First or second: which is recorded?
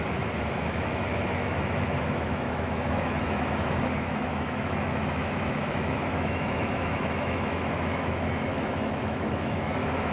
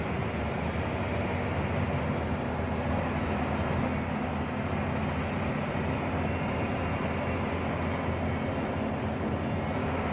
second